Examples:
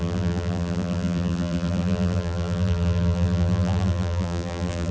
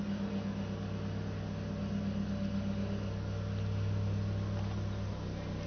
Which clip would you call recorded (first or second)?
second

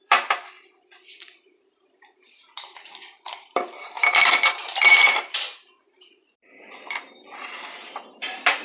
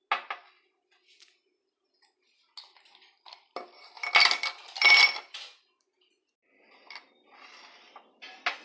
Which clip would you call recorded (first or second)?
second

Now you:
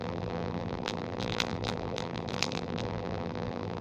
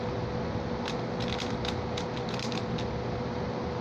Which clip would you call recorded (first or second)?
second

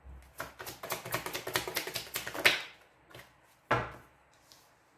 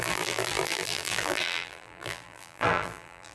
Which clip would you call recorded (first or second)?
first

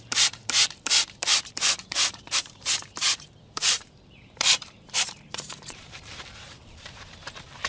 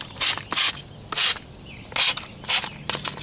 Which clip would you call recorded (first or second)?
second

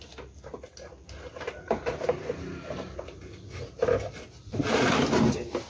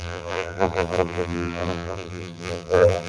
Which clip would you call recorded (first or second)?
first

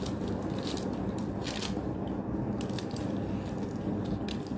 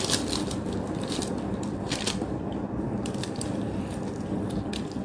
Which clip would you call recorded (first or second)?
first